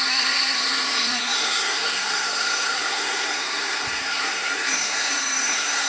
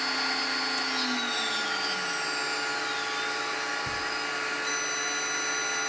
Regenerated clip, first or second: first